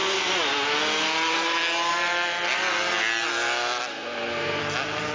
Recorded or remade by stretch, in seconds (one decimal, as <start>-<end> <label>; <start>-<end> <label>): 0.0-3.9 recorded; 3.9-4.6 remade; 4.6-5.1 recorded